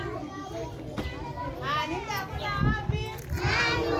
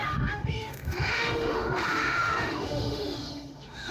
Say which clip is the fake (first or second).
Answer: second